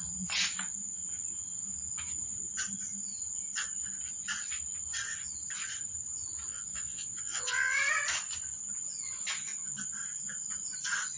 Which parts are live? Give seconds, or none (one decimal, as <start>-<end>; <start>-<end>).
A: 0.0-6.5; 7.8-11.2